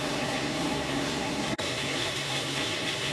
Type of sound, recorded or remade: remade